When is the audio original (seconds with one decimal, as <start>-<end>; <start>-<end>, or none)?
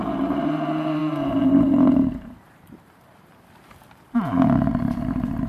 none